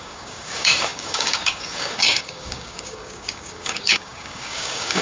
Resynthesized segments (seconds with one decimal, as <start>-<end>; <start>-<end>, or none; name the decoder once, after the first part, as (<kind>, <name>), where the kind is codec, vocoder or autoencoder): 0.0-5.0 (codec, DAC)